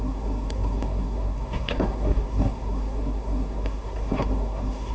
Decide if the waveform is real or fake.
fake